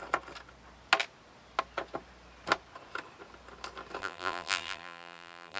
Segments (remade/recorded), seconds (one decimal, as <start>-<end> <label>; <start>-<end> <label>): 0.0-4.0 recorded; 4.0-5.6 remade